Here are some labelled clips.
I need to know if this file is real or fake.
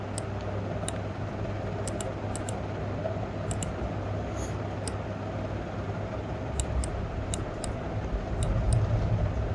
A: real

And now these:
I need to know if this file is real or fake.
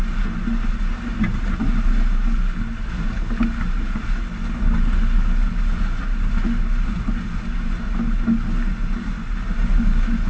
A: real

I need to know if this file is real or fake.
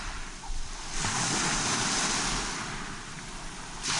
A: real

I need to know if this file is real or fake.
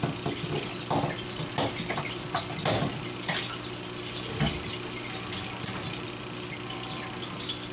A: real